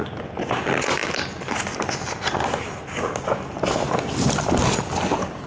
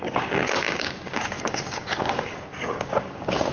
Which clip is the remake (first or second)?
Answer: second